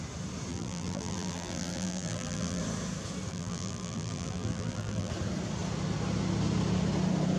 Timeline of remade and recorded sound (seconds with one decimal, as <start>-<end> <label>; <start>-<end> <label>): 0.0-0.5 recorded; 0.5-2.6 remade; 2.6-3.3 recorded; 3.3-5.1 remade; 5.1-7.4 recorded